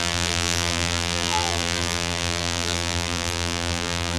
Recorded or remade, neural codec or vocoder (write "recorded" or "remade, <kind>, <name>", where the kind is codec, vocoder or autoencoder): remade, vocoder, BigVGAN v2